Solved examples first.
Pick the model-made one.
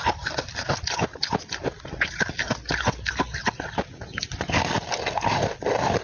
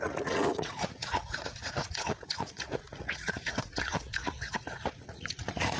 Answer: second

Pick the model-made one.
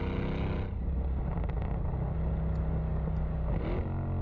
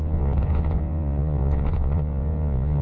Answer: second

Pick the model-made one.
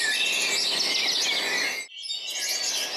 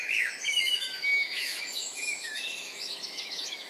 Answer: second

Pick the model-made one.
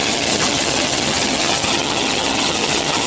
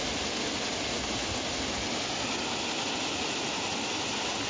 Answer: first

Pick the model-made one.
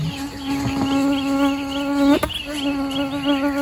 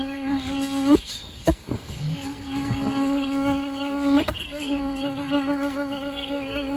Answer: second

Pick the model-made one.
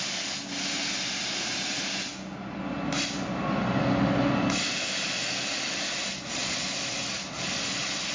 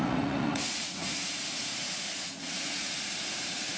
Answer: second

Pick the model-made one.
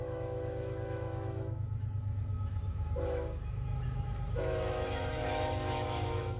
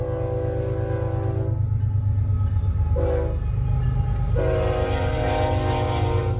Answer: first